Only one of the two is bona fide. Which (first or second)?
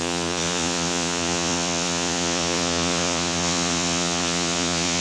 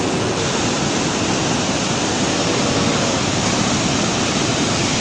second